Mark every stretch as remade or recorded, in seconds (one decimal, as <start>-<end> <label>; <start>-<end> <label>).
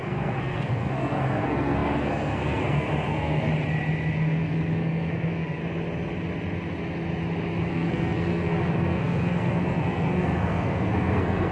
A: 0.0-3.5 remade; 3.5-4.1 recorded; 4.1-5.6 remade; 5.6-7.7 recorded; 7.7-11.5 remade